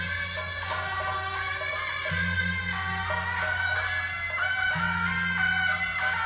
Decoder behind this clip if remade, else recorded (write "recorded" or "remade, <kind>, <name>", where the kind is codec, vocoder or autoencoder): recorded